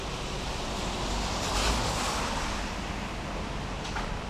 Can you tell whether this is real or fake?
real